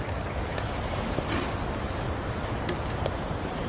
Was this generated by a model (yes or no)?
yes